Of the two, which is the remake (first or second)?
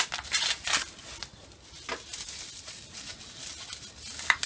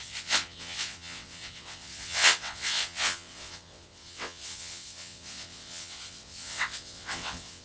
second